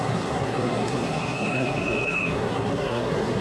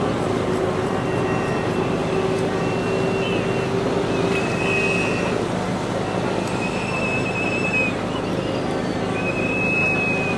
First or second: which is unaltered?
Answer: second